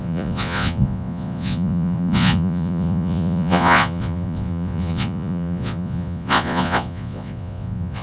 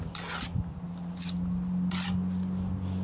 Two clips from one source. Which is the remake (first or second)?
first